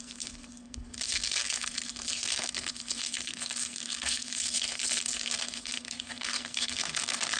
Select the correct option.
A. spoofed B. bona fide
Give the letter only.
A